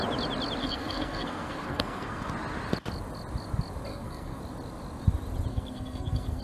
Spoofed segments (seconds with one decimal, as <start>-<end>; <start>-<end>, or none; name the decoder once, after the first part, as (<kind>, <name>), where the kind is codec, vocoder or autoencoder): 0.6-2.3 (codec, SNAC); 3.9-4.4; 5.5-6.4